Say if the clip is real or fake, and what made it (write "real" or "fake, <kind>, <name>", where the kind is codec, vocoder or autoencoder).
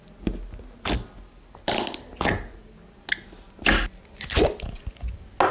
real